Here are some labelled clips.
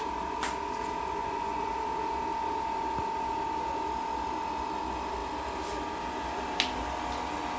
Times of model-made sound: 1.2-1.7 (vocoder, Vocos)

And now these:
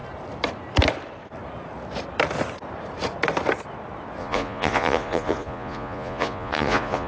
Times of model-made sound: 4.2-7.1 (vocoder, Vocos)